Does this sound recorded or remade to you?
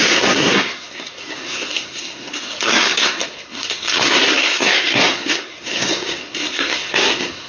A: remade